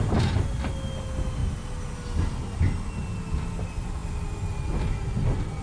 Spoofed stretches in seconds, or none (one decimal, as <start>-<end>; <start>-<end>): none